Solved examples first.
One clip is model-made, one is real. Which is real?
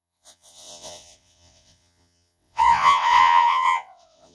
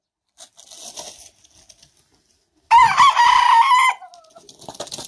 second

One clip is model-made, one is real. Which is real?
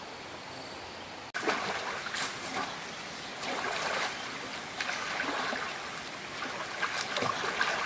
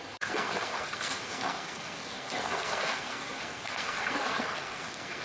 first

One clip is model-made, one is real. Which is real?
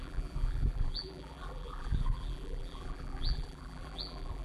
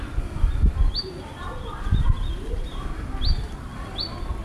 second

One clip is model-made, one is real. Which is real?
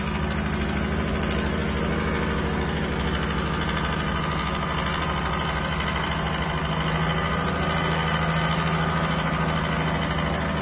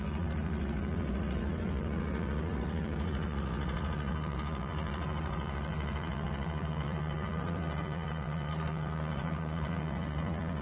first